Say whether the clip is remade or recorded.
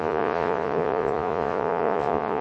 remade